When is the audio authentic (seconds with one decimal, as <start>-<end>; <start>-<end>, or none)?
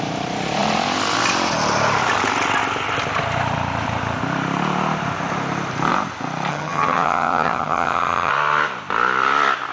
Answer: 0.0-6.5; 8.3-9.7